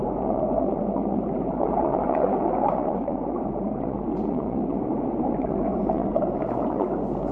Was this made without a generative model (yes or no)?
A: no